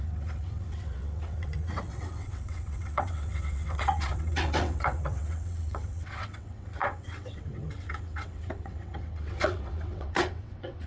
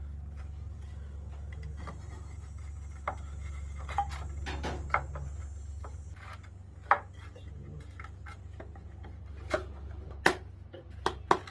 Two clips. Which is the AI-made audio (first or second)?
first